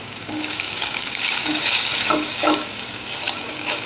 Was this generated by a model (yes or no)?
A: yes